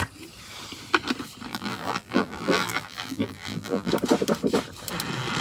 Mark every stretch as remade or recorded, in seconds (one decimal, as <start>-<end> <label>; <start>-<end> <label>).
0.0-1.5 recorded; 1.5-3.9 remade; 3.9-5.4 recorded

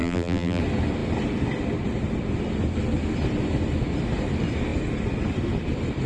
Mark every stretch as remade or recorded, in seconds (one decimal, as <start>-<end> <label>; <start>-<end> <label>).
0.0-0.6 remade; 0.6-6.1 recorded

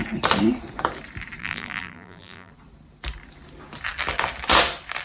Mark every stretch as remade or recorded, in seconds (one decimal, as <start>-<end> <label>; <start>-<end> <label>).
0.0-1.4 recorded; 1.4-2.5 remade; 2.5-5.0 recorded

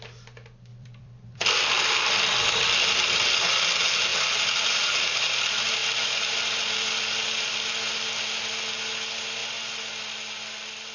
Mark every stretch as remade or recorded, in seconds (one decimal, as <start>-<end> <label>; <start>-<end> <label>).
0.0-0.7 recorded; 0.7-1.5 remade; 1.5-5.8 recorded; 5.8-7.7 remade; 7.7-10.9 recorded

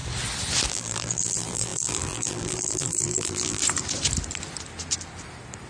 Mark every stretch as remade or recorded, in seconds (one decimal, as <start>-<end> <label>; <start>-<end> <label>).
0.0-0.7 recorded; 0.7-3.6 remade; 3.6-5.7 recorded

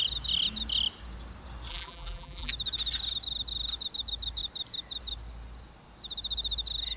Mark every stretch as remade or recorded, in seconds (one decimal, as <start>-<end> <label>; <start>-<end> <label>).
0.0-1.7 recorded; 1.7-2.5 remade; 2.5-7.0 recorded

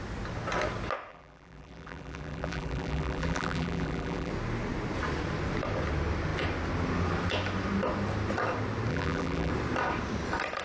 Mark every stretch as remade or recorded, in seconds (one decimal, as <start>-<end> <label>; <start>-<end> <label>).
0.0-1.1 recorded; 1.1-4.3 remade; 4.3-8.9 recorded; 8.9-9.5 remade; 9.5-10.6 recorded